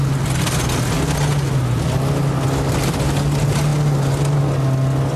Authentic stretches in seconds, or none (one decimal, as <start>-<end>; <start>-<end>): 0.0-5.2